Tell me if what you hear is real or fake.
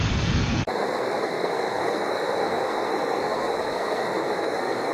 fake